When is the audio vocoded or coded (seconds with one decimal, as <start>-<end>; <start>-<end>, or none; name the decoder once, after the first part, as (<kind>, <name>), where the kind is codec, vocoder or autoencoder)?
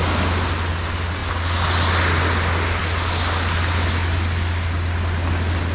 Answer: none